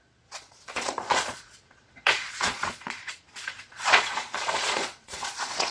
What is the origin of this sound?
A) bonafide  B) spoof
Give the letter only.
B